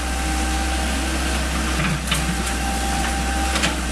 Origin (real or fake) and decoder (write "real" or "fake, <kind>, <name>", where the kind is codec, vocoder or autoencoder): real